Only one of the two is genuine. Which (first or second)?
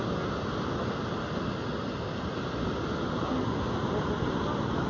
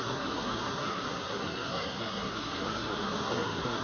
first